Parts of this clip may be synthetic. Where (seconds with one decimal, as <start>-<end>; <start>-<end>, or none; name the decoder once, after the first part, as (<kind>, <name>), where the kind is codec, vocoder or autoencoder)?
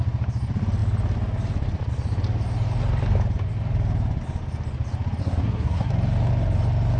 5.2-5.9 (codec, SNAC)